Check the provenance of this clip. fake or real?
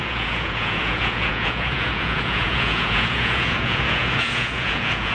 fake